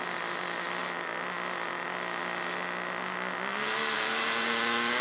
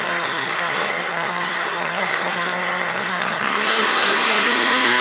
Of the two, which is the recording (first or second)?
first